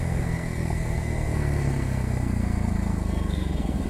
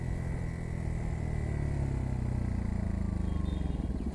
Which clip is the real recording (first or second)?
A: second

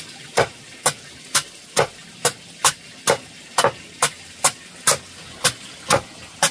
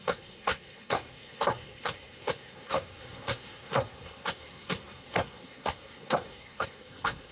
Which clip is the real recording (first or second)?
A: first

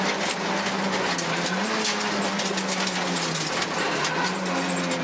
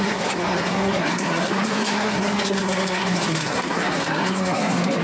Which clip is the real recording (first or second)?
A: first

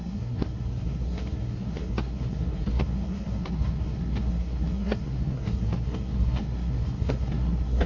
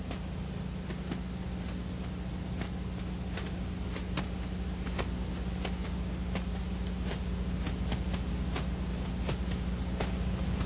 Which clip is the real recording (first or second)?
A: second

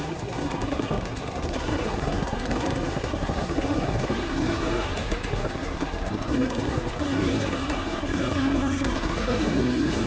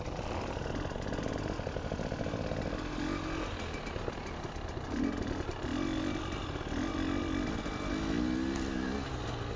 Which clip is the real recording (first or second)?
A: second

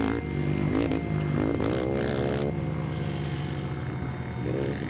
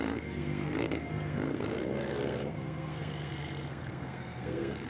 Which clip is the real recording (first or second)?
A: first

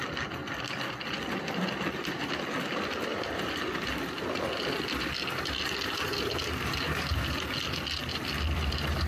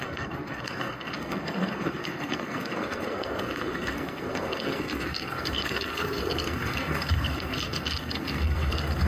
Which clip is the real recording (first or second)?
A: first